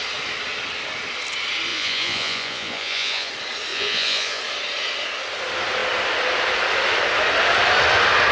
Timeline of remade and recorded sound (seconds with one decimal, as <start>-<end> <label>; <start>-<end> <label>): 0.0-1.7 recorded; 1.7-3.3 remade; 3.3-3.7 recorded; 3.7-4.4 remade; 4.4-8.3 recorded